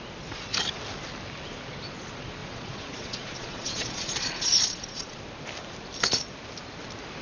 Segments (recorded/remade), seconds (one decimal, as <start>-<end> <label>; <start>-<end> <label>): 0.0-2.4 recorded; 2.4-5.2 remade; 5.2-7.2 recorded